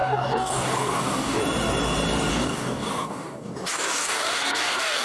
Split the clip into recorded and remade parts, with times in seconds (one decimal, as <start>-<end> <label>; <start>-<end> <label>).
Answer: 0.0-1.4 remade; 1.4-2.3 recorded; 2.3-5.0 remade